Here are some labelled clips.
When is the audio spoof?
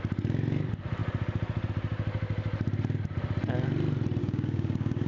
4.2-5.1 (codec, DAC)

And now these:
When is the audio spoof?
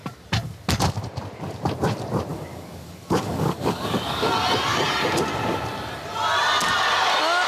2.3-4.3 (codec, DAC)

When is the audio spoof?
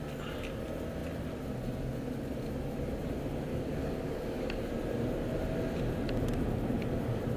3.5-4.7 (codec, DAC)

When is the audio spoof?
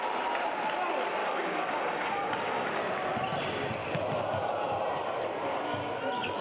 1.2-2.8 (codec, DAC)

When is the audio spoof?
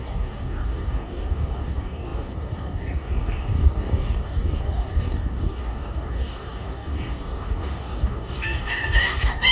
0.0-9.5 (codec, DAC)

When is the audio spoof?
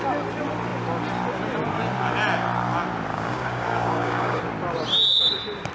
3.1-4.4 (codec, DAC)